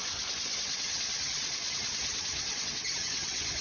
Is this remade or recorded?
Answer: remade